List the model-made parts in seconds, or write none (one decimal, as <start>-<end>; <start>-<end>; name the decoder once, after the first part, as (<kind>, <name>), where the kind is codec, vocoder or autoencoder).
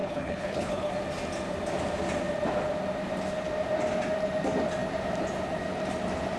0.0-0.9 (codec, HILCodec)